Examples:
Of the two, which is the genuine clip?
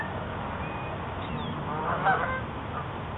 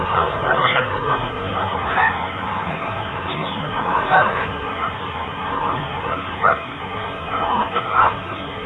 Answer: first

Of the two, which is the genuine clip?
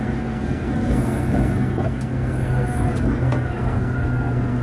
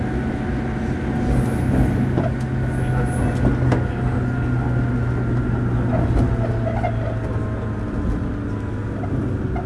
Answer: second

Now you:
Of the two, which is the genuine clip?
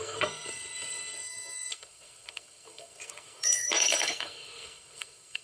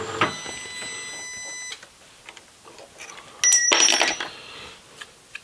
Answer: second